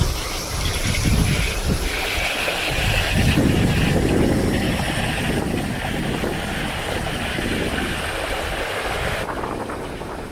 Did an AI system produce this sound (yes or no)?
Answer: no